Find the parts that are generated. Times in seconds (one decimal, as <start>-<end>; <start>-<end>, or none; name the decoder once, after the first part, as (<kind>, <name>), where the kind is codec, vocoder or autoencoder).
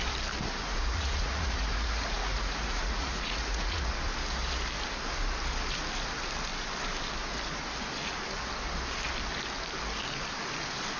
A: 0.7-3.9 (vocoder, Vocos)